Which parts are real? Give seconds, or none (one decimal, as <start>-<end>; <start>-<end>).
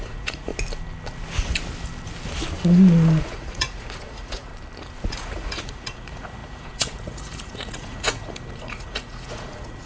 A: 0.5-3.2; 4.5-5.1